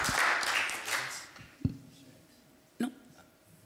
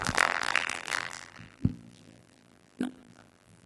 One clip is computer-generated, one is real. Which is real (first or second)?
first